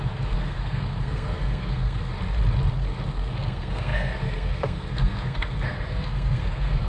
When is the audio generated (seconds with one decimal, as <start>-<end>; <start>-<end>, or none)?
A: 0.0-2.1; 3.1-6.9